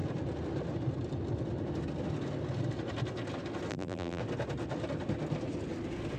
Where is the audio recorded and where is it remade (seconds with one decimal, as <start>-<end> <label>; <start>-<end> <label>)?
0.0-3.7 recorded; 3.7-4.2 remade; 4.2-6.2 recorded